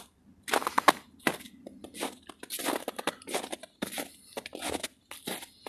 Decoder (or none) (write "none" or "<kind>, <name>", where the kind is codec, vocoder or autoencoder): none